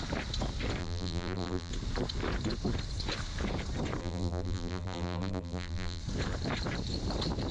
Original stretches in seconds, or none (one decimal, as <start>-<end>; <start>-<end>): 0.0-0.8; 1.7-4.0; 6.0-7.5